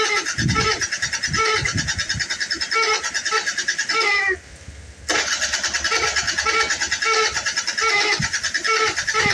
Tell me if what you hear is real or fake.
real